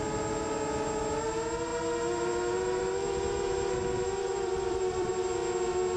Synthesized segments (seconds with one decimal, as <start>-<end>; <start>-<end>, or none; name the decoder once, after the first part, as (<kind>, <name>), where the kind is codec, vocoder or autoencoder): 4.2-5.1 (vocoder, BigVGAN v2)